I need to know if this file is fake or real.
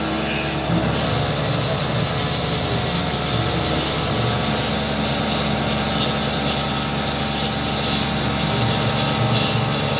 real